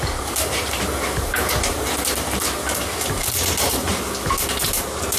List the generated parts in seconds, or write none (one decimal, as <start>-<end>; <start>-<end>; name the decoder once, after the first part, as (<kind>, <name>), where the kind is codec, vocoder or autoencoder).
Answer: 0.0-3.9 (vocoder, BigVGAN v2); 4.6-5.2